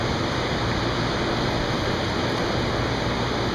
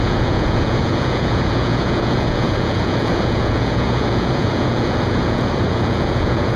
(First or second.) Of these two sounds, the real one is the first